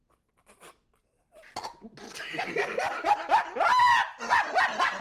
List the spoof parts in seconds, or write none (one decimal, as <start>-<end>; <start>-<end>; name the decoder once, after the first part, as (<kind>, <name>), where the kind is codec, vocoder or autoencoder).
none